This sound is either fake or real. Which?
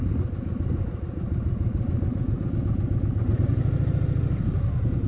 real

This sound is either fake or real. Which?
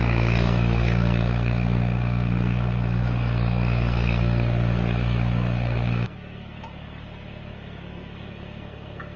fake